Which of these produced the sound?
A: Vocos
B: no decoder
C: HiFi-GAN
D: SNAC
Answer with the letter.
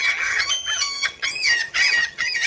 C